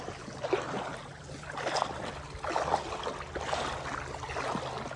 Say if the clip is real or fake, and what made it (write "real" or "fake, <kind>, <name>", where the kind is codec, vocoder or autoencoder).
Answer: real